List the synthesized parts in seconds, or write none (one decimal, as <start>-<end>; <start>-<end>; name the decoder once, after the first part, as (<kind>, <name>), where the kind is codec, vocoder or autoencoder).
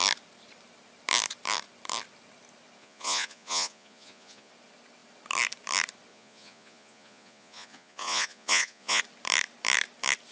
2.8-4.5 (vocoder, Vocos); 6.1-9.0